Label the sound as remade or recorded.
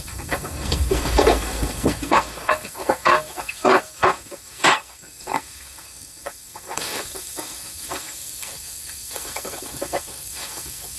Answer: remade